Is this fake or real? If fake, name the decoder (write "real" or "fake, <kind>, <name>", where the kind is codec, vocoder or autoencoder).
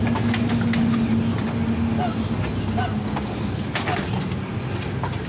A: real